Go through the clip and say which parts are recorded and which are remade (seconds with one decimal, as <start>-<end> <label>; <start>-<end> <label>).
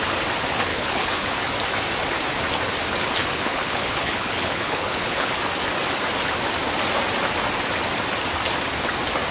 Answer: 0.0-0.7 recorded; 0.7-1.5 remade; 1.5-3.2 recorded; 3.2-5.3 remade; 5.3-9.3 recorded